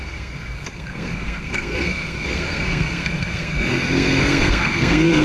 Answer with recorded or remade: remade